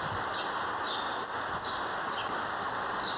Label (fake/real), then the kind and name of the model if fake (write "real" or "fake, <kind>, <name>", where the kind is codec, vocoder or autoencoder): real